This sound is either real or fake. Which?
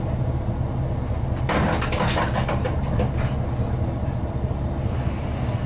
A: real